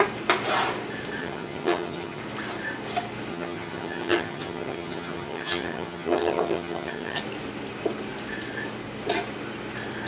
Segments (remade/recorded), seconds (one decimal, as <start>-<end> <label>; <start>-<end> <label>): 0.0-1.2 recorded; 1.2-2.2 remade; 2.2-3.3 recorded; 3.3-7.2 remade; 7.2-10.1 recorded